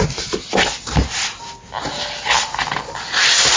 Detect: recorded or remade recorded